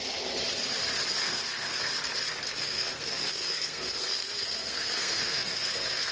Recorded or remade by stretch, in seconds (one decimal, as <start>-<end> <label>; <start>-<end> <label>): 0.0-1.2 recorded; 1.2-1.8 remade; 1.8-2.3 recorded; 2.3-6.1 remade